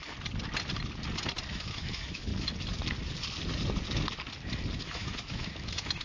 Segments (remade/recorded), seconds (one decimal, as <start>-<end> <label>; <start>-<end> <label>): 0.0-1.5 recorded; 1.5-2.3 remade; 2.3-4.8 recorded; 4.8-6.0 remade